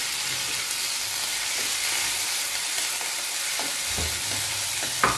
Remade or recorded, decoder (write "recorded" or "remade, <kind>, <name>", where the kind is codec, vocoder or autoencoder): recorded